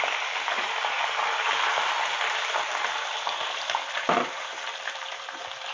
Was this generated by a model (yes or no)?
yes